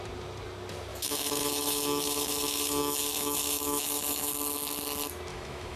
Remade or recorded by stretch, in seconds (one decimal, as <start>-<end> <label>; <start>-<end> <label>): 0.0-0.9 recorded; 0.9-4.3 remade; 4.3-5.3 recorded; 5.3-5.8 remade

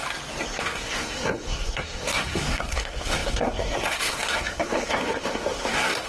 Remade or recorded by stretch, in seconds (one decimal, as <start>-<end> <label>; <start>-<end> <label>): 0.0-0.6 recorded; 0.6-6.1 remade